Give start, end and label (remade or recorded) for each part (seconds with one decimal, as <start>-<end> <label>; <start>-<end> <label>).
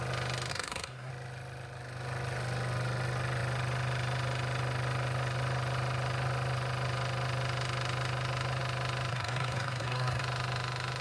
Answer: 0.0-0.5 recorded; 0.5-1.1 remade; 1.1-9.1 recorded; 9.1-10.2 remade; 10.2-11.0 recorded